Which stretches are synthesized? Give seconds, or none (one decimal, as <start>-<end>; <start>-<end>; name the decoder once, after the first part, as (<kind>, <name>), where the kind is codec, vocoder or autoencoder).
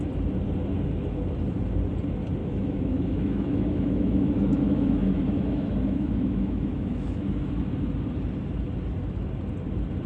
2.4-7.5 (autoencoder, DAC-VAE)